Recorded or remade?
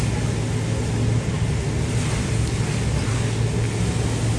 recorded